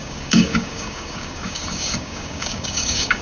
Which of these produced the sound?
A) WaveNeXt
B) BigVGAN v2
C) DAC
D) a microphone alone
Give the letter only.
C